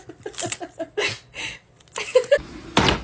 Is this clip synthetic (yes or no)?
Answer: no